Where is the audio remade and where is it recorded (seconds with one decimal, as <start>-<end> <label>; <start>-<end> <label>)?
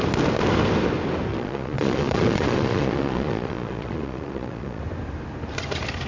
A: 0.0-1.3 recorded; 1.3-4.8 remade; 4.8-6.1 recorded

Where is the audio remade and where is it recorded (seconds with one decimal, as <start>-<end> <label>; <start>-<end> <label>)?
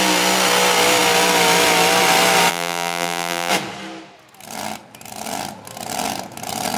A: 0.0-2.5 recorded; 2.5-3.5 remade; 3.5-6.8 recorded